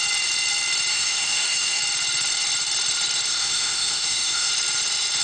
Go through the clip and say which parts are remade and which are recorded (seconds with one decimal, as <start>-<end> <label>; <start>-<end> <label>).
0.0-0.9 recorded; 0.9-1.8 remade; 1.8-3.3 recorded; 3.3-4.5 remade; 4.5-5.2 recorded